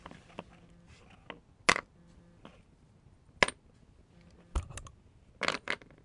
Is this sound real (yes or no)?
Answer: yes